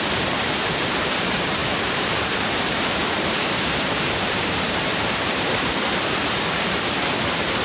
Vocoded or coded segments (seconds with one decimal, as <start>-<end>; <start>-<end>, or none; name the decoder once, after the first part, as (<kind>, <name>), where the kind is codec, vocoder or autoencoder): 0.0-7.6 (vocoder, BigVGAN v2)